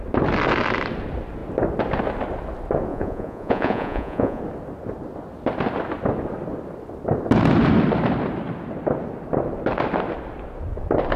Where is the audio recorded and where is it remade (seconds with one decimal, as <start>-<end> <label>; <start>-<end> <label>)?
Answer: 0.0-2.9 recorded; 2.9-4.4 remade; 4.4-11.2 recorded